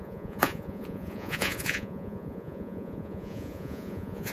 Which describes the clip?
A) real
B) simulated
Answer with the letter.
B